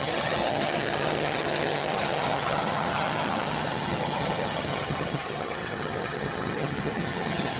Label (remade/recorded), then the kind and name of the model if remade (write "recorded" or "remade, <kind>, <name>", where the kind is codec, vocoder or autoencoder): remade, vocoder, HiFi-GAN